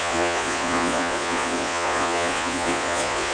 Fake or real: fake